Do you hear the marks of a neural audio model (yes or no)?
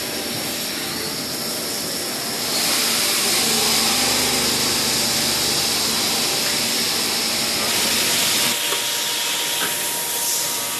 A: no